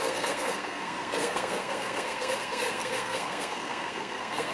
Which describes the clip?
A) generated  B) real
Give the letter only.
A